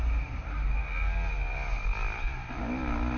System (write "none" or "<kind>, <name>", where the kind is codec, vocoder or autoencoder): none